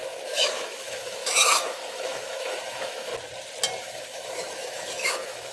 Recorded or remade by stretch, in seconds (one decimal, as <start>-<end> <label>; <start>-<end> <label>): 0.0-3.1 remade; 3.1-3.8 recorded; 3.8-5.5 remade